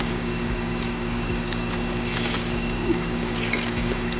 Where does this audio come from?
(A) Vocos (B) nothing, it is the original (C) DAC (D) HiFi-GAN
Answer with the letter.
C